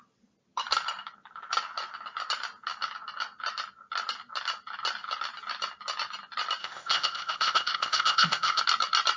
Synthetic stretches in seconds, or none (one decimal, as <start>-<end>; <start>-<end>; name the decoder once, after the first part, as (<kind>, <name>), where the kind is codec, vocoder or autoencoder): 6.6-8.6 (codec, ZipCodec)